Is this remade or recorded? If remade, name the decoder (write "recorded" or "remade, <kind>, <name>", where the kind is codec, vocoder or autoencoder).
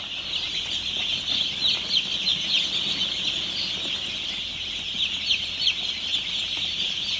recorded